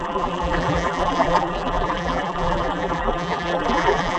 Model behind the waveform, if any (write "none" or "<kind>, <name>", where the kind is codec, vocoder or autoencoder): vocoder, BigVGAN v2